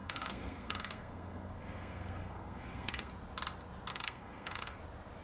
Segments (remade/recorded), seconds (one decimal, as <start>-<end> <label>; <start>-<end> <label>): 0.0-3.1 remade; 3.1-3.9 recorded; 3.9-4.8 remade; 4.8-5.2 recorded